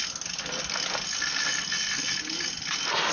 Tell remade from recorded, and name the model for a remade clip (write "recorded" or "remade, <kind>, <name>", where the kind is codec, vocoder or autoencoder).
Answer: recorded